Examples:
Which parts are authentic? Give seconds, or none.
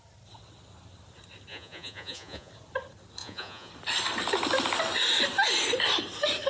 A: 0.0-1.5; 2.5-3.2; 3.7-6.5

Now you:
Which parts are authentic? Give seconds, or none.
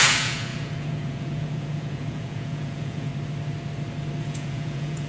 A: 3.1-4.2